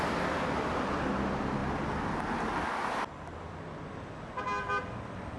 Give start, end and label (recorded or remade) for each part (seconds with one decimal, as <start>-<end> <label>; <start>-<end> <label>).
0.0-5.4 recorded